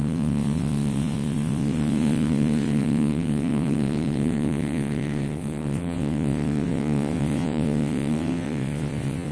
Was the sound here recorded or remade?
remade